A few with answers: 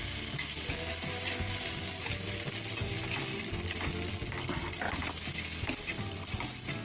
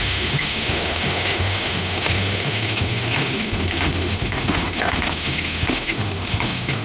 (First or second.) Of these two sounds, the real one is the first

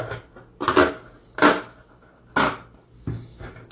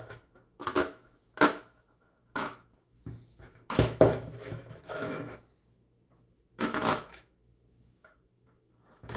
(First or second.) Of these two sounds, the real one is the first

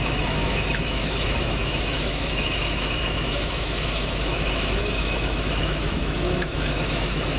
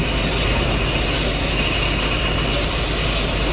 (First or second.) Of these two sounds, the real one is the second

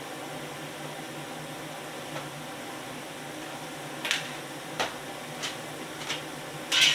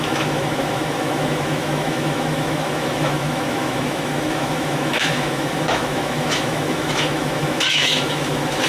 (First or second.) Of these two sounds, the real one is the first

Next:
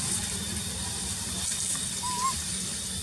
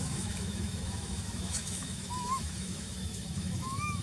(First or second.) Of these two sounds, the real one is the first